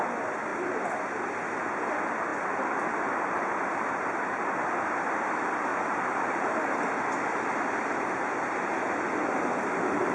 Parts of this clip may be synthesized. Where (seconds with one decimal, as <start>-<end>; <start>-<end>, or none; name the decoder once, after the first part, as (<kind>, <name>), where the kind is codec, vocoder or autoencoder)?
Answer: 2.3-3.5 (vocoder, BigVGAN v2); 5.7-6.6